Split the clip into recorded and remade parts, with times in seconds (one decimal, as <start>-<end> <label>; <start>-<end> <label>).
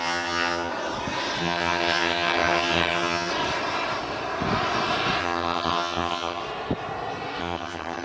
0.0-0.7 remade; 0.7-1.4 recorded; 1.4-3.3 remade; 3.3-5.2 recorded; 5.2-6.4 remade; 6.4-7.4 recorded; 7.4-8.0 remade